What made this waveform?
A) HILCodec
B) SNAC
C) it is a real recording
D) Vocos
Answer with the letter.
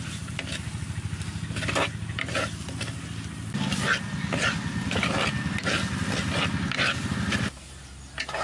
C